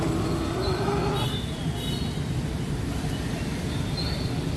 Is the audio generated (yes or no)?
no